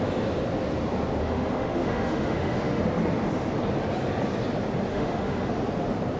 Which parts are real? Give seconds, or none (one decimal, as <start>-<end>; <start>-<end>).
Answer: 0.0-1.2; 2.8-4.9; 5.5-6.2